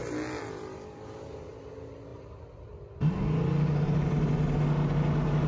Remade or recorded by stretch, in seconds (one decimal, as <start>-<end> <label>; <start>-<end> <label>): 0.0-2.1 recorded; 2.1-3.1 remade; 3.1-5.5 recorded